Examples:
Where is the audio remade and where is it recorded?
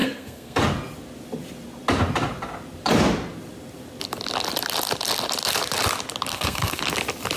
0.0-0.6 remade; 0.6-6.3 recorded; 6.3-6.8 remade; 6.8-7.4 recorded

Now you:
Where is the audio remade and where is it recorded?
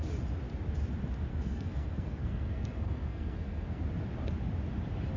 0.0-1.3 recorded; 1.3-3.8 remade; 3.8-5.2 recorded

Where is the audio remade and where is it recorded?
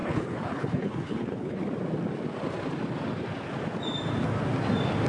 0.0-1.6 remade; 1.6-5.1 recorded